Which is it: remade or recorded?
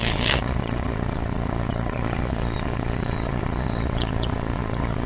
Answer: remade